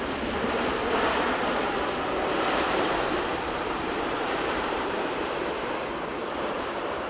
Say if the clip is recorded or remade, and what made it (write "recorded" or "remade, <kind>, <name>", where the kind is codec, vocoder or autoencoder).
remade, vocoder, BigVGAN v2